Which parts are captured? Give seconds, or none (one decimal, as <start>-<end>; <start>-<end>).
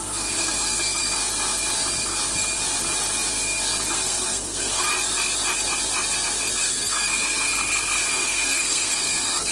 1.0-3.9; 4.9-6.6; 7.5-8.1